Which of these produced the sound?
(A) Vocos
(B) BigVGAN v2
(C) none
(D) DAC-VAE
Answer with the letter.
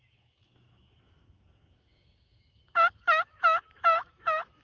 D